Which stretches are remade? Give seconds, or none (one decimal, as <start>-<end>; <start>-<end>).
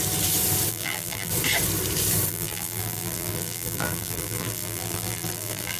0.7-1.3; 2.3-5.8